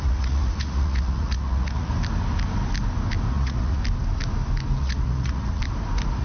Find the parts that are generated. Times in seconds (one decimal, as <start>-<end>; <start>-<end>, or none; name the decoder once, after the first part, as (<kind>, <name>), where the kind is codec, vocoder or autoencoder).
0.0-1.9 (vocoder, Vocos); 3.3-3.8; 4.8-5.6